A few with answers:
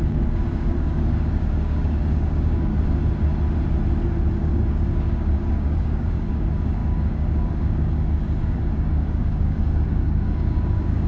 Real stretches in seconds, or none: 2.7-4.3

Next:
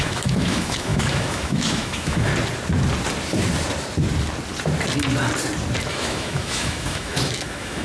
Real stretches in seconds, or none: 2.3-5.9